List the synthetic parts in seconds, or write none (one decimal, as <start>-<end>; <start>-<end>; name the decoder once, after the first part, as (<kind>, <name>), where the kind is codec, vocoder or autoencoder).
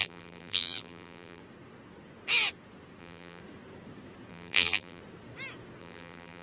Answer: 0.0-1.4 (vocoder, BigVGAN v2); 3.0-3.4; 4.3-5.0; 5.8-6.4